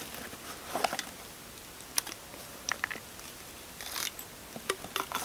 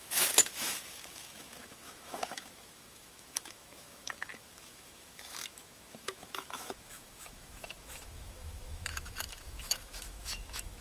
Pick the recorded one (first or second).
first